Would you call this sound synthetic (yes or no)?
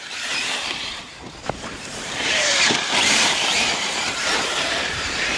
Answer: yes